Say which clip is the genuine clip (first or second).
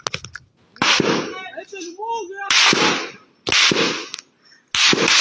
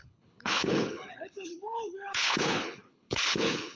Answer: first